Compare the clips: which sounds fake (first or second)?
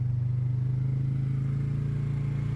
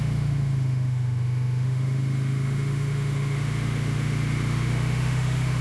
second